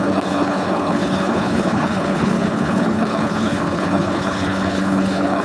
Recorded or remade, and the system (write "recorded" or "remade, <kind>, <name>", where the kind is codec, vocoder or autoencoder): remade, codec, HILCodec